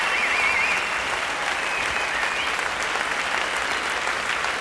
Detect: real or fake real